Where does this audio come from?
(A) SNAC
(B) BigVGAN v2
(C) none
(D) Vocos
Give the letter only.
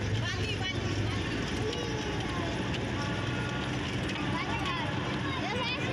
C